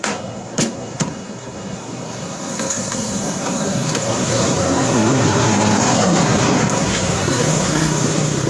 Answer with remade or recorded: remade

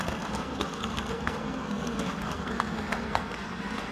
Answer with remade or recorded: remade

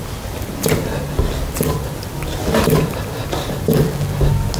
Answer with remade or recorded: recorded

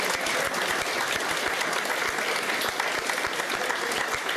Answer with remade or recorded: recorded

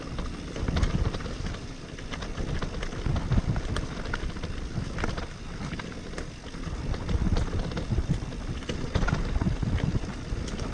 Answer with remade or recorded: recorded